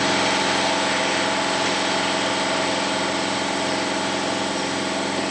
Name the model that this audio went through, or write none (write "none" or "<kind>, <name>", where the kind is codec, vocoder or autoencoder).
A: none